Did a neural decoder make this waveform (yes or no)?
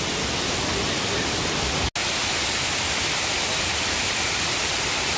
no